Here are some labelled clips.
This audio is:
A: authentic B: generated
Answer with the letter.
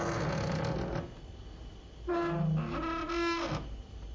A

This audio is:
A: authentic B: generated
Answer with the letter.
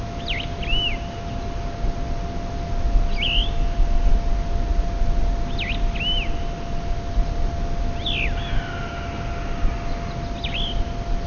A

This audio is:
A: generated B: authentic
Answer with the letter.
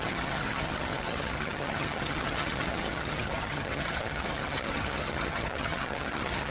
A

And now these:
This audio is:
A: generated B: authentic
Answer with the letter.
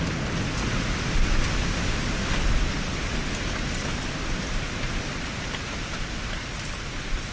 B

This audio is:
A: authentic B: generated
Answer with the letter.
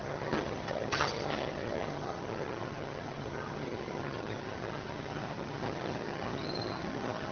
B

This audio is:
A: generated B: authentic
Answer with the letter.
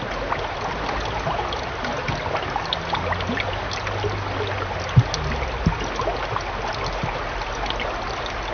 B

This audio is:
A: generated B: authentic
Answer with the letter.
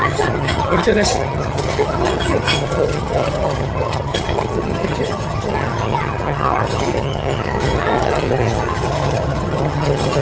A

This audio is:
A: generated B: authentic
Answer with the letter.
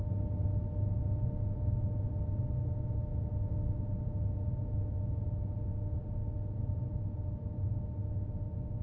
B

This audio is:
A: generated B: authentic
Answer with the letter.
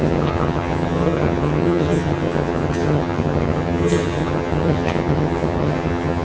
A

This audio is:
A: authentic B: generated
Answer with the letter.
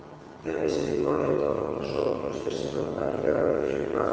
B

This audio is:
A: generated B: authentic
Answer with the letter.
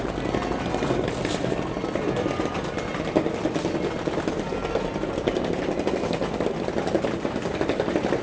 B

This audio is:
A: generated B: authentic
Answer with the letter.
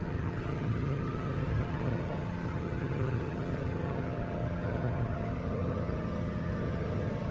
A